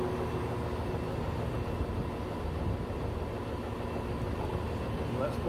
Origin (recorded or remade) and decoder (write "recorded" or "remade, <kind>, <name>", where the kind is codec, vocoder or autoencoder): recorded